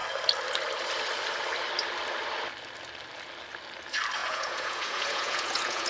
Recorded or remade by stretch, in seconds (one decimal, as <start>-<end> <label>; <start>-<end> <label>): 0.0-4.2 recorded; 4.2-5.9 remade